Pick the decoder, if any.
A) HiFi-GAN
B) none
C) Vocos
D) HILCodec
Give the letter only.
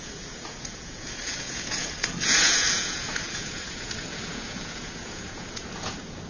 C